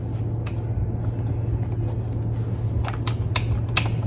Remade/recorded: recorded